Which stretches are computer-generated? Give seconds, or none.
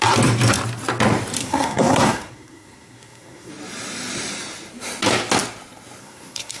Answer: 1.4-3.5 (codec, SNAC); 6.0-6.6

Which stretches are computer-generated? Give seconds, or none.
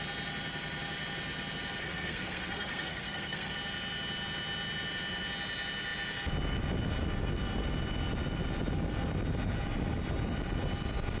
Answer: 1.8-3.5 (codec, SNAC)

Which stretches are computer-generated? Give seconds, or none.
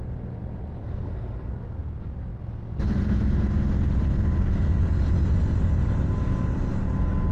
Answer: 0.8-1.5 (codec, SNAC)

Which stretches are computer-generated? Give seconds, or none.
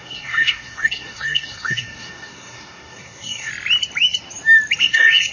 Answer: 0.0-3.5 (codec, SNAC); 4.8-5.3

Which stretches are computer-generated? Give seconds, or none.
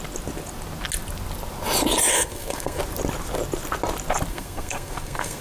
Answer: 2.1-2.8 (codec, SNAC); 4.3-5.4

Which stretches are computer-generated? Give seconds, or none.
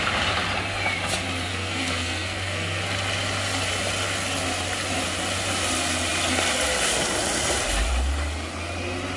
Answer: 1.5-2.8 (codec, SNAC)